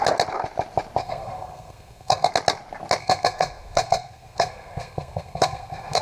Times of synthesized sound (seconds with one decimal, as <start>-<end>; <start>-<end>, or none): 1.0-2.3; 3.0-6.0